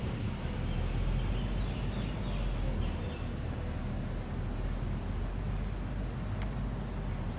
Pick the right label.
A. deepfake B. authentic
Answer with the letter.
B